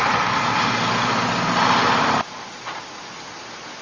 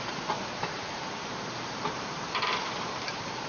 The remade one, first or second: second